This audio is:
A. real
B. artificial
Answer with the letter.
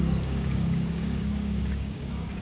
B